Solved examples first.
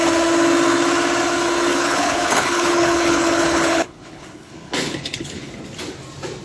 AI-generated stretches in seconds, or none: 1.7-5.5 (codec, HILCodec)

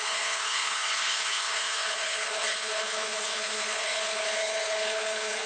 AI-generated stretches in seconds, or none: 0.0-5.5 (codec, HILCodec)

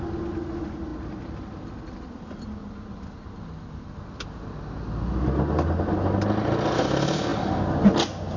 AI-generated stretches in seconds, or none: none

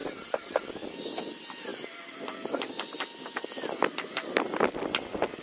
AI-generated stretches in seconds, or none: none

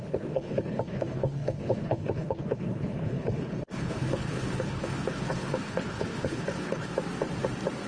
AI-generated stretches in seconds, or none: 0.0-6.9 (codec, HILCodec)

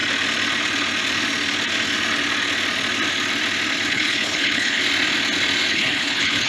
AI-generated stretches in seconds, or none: 3.9-4.8 (codec, HILCodec); 5.7-6.5

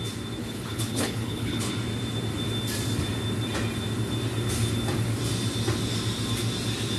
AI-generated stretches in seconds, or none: 0.4-1.7 (codec, HILCodec)

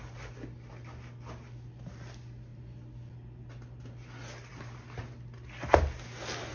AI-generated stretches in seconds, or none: none